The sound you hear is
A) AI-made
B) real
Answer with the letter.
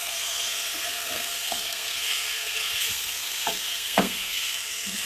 A